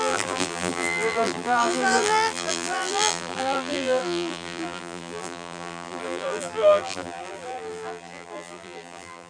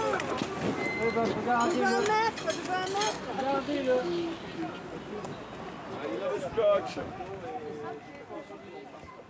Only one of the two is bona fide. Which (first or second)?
second